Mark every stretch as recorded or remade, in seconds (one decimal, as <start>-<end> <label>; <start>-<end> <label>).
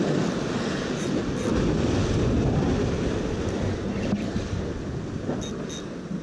0.0-6.2 recorded